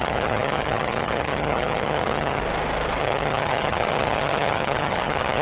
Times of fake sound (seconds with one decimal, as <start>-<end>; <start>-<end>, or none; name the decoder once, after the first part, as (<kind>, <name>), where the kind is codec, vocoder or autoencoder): 0.0-2.4 (vocoder, HiFi-GAN); 3.0-5.4